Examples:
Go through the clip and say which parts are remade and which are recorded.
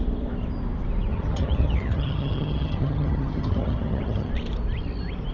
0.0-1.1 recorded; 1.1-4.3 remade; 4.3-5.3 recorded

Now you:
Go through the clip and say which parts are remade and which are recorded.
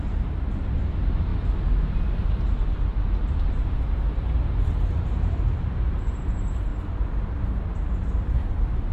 0.0-1.3 remade; 1.3-3.3 recorded; 3.3-6.7 remade; 6.7-8.9 recorded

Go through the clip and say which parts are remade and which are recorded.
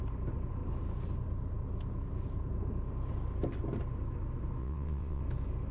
0.0-4.6 recorded; 4.6-5.2 remade; 5.2-5.7 recorded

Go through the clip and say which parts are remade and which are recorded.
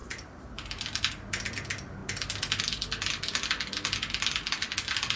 0.0-0.8 remade; 0.8-5.2 recorded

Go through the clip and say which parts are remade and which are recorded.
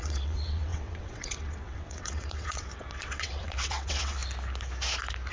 0.0-4.2 remade; 4.2-5.3 recorded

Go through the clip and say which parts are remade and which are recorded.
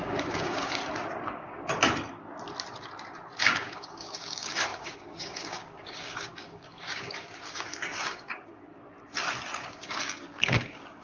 0.0-0.8 remade; 0.8-3.4 recorded; 3.4-8.6 remade; 8.6-9.6 recorded; 9.6-11.0 remade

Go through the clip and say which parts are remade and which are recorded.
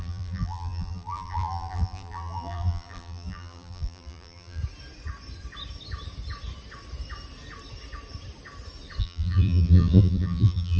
0.0-4.6 remade; 4.6-9.0 recorded; 9.0-10.8 remade